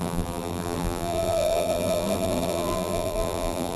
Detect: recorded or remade remade